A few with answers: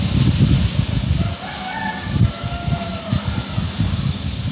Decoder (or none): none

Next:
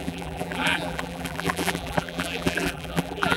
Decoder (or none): vocoder, BigVGAN v2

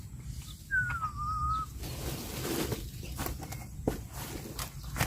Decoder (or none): none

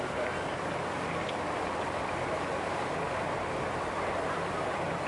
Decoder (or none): vocoder, BigVGAN v2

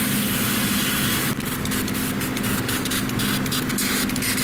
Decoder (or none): none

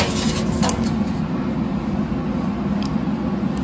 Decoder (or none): none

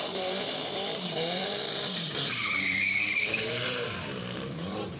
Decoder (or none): vocoder, BigVGAN v2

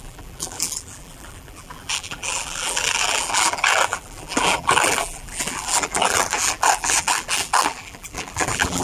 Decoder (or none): vocoder, BigVGAN v2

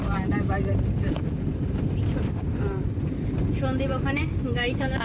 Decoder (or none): vocoder, BigVGAN v2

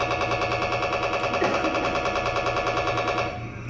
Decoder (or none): none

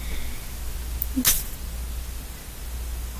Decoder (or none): none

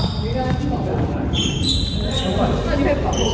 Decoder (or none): none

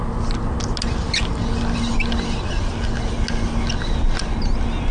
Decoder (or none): none